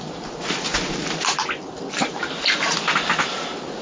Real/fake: real